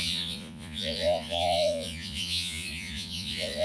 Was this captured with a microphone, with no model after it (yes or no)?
no